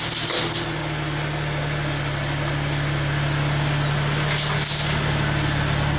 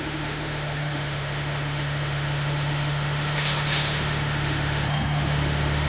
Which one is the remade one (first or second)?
second